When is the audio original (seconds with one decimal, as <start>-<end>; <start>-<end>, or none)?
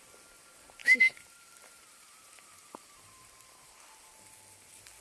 0.0-0.8; 3.8-5.0